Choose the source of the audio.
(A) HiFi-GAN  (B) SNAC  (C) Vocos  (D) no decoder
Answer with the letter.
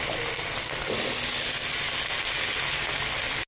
D